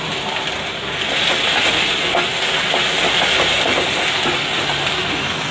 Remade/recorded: recorded